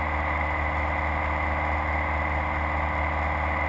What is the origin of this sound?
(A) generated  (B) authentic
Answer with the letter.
B